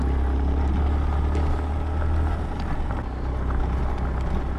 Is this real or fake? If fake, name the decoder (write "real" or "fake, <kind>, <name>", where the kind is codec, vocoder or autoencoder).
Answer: real